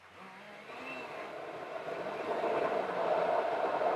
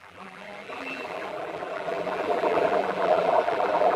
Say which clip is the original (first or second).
first